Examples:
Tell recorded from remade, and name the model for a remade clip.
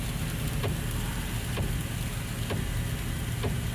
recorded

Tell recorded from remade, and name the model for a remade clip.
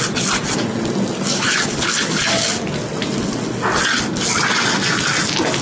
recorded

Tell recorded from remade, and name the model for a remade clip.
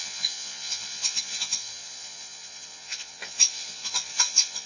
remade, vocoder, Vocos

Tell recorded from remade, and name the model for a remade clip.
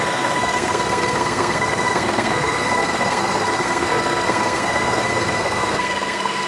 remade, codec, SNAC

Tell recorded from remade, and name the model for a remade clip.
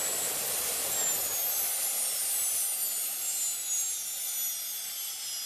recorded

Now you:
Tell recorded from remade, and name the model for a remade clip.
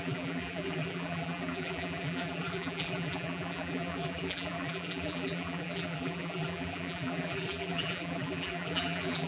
remade, vocoder, BigVGAN v2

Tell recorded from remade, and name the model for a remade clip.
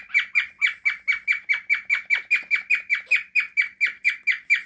recorded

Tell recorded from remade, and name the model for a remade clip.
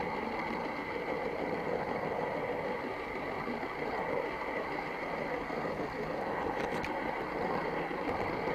recorded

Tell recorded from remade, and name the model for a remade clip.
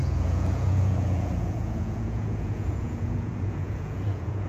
remade, vocoder, Vocos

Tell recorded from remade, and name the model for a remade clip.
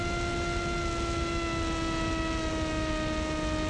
recorded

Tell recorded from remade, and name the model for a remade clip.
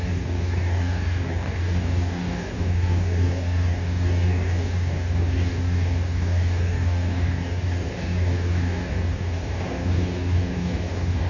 remade, codec, DAC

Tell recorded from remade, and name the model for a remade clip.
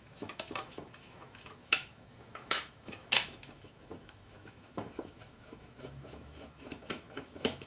remade, autoencoder, DAC-VAE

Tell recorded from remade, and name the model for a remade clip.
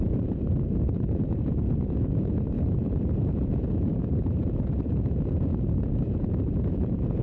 remade, vocoder, Vocos